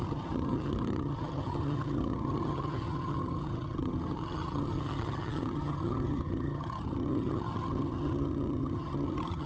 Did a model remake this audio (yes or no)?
yes